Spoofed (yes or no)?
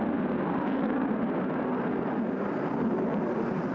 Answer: no